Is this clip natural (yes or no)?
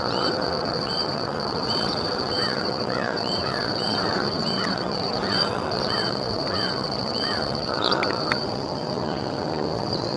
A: no